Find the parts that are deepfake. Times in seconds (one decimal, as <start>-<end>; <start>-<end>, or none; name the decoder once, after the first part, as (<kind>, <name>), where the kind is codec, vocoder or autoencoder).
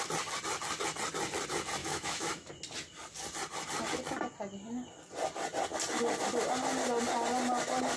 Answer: 1.8-2.5 (autoencoder, DAC-VAE)